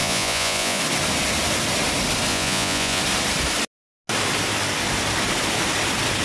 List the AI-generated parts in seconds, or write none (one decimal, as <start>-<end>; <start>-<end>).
0.0-0.8; 2.3-3.0